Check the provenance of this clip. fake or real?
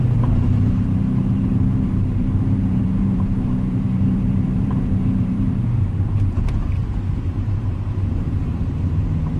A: fake